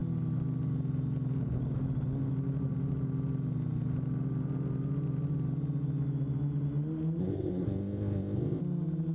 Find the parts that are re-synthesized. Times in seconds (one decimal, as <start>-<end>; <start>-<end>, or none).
7.2-8.6